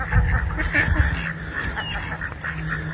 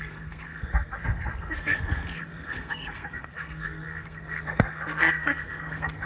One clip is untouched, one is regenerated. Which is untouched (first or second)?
first